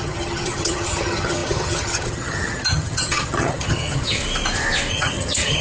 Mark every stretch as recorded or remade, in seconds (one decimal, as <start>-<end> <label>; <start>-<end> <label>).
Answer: 0.0-4.2 remade; 4.2-4.9 recorded; 4.9-5.6 remade